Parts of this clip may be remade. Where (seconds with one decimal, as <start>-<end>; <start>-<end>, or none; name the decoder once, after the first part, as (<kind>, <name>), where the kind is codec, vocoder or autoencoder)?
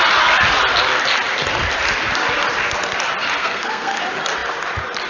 3.4-4.0 (codec, SNAC)